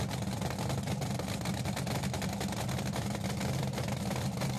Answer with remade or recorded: recorded